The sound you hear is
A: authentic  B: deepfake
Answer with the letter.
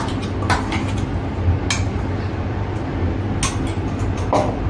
A